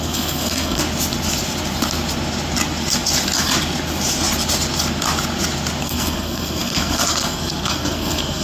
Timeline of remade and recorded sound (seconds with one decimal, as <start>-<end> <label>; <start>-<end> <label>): 0.0-0.8 remade; 0.8-5.8 recorded; 5.8-8.4 remade